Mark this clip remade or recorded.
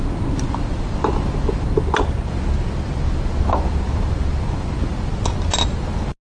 recorded